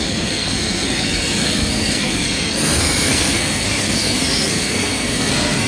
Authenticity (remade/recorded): remade